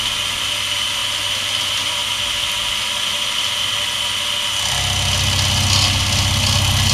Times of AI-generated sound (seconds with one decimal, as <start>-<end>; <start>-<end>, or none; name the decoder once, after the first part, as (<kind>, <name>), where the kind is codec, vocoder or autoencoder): none